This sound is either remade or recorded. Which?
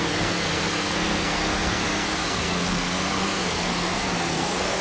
remade